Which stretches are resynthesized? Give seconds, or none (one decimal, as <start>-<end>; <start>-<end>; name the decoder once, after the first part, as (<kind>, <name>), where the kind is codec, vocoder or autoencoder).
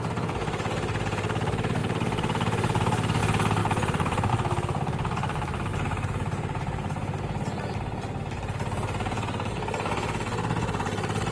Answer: 1.8-3.2 (vocoder, BigVGAN v2); 5.7-7.2